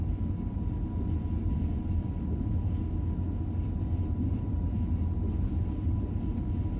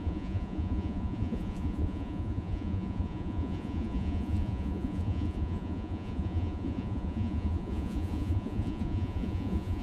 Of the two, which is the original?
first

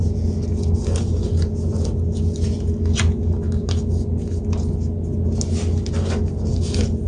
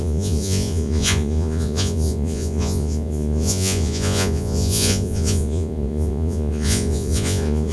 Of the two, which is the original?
first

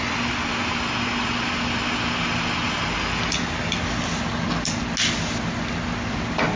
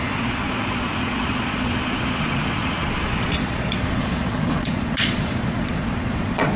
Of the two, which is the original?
first